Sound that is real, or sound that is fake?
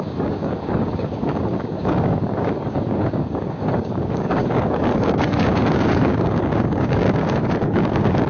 fake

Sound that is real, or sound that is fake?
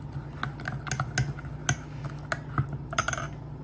real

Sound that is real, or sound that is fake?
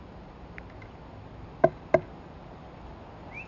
real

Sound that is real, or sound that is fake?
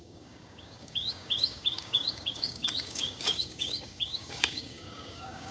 fake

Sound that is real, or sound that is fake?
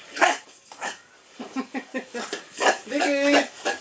fake